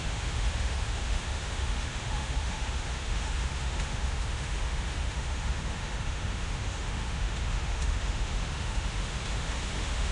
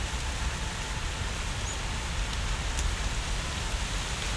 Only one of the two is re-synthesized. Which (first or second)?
first